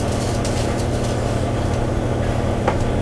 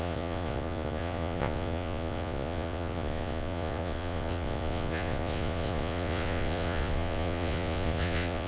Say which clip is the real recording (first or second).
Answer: first